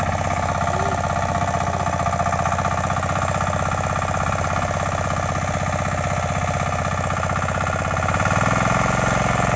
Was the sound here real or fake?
real